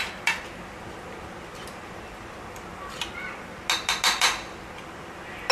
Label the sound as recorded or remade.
recorded